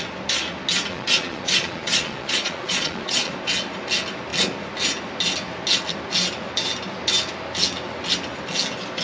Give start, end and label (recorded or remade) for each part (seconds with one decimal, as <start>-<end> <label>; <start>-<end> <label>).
0.0-0.9 recorded; 0.9-3.3 remade; 3.3-9.0 recorded